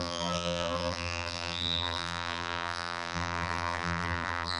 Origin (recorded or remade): remade